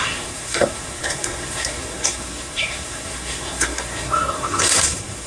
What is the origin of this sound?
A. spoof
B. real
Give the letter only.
A